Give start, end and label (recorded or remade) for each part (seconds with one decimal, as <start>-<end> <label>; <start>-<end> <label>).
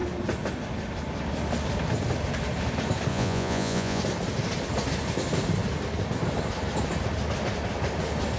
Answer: 0.0-3.1 recorded; 3.1-4.0 remade; 4.0-8.4 recorded